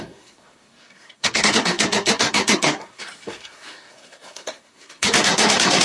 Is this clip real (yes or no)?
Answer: no